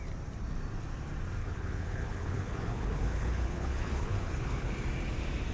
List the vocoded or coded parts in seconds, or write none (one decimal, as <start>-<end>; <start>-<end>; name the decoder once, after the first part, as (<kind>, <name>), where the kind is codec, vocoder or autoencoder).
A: 1.4-4.7 (codec, HILCodec)